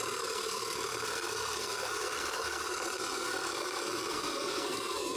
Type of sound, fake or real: fake